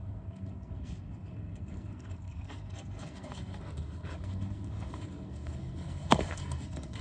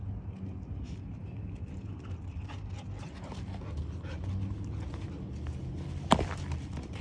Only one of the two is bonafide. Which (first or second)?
second